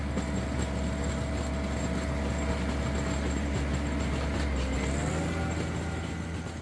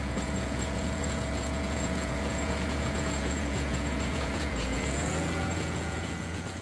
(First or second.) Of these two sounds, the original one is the first